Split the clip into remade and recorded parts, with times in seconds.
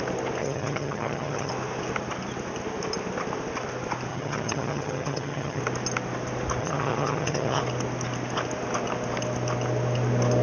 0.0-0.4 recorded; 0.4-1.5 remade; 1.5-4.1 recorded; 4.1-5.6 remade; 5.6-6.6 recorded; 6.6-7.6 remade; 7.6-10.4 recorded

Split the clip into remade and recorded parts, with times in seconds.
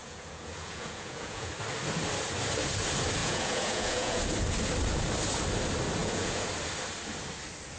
0.0-1.5 remade; 1.5-3.2 recorded; 3.2-4.2 remade; 4.2-6.0 recorded; 6.0-6.5 remade; 6.5-7.8 recorded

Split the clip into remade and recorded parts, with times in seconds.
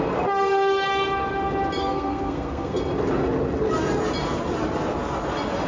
0.0-1.8 recorded; 1.8-2.8 remade; 2.8-5.7 recorded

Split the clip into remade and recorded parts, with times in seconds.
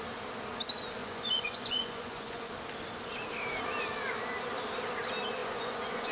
0.0-1.0 recorded; 1.0-2.5 remade; 2.5-5.4 recorded; 5.4-6.1 remade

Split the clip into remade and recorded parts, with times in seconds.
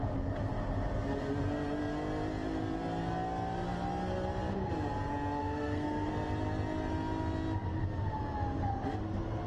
0.0-5.4 recorded; 5.4-6.1 remade; 6.1-9.5 recorded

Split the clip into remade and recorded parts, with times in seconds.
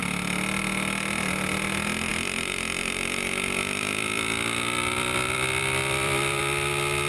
0.0-2.1 recorded; 2.1-6.4 remade; 6.4-7.1 recorded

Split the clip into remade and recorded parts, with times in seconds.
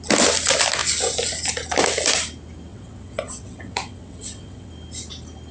0.0-2.7 recorded; 2.7-4.7 remade; 4.7-5.5 recorded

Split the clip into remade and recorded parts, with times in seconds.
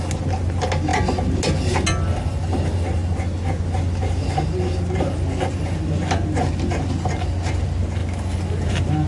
0.0-9.1 recorded